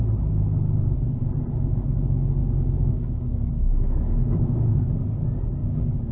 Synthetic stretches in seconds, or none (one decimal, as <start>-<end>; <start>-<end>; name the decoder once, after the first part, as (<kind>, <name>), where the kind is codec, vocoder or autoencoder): 2.4-4.9 (codec, DAC); 5.6-6.1